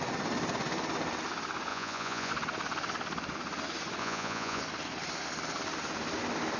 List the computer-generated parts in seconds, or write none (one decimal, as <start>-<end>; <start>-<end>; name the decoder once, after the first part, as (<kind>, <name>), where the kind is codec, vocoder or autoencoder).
1.7-2.3 (vocoder, Vocos); 4.0-4.6